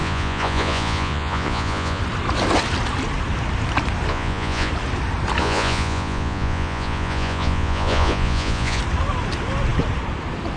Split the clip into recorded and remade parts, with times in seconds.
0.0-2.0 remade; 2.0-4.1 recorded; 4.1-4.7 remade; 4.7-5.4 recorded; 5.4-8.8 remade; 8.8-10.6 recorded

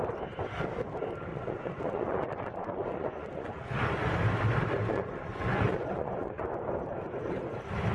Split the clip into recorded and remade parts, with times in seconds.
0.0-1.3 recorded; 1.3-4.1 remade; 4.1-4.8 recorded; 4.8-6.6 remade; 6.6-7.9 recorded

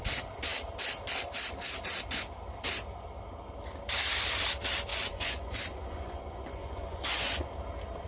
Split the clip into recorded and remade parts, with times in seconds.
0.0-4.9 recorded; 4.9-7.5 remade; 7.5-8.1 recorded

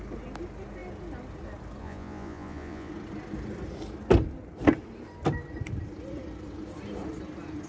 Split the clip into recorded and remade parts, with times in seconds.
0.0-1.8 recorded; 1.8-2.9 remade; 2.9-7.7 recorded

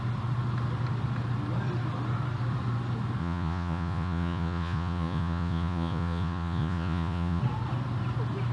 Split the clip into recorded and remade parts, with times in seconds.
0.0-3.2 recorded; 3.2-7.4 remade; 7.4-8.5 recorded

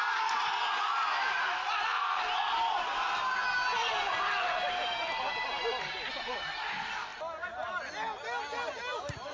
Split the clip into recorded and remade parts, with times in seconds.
0.0-9.3 recorded

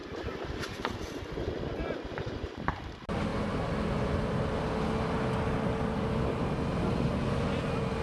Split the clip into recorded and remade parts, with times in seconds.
0.0-8.0 recorded